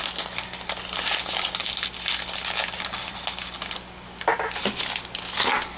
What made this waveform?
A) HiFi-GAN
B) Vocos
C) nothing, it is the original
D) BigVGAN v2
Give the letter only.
C